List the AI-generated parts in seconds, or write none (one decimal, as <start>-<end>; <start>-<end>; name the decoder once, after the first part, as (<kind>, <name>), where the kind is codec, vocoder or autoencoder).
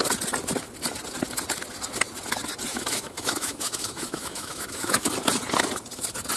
2.7-5.1 (autoencoder, DAC-VAE)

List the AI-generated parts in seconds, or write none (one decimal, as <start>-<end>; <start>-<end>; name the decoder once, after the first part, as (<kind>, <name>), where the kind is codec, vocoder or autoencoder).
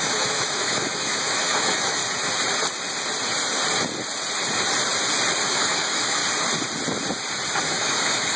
0.0-2.0 (autoencoder, DAC-VAE); 5.5-6.2; 7.6-8.4